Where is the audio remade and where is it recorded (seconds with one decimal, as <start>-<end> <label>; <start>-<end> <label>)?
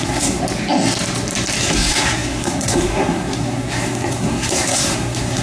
0.0-0.4 remade; 0.4-1.6 recorded; 1.6-5.4 remade